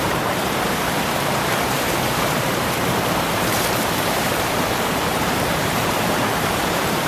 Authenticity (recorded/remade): remade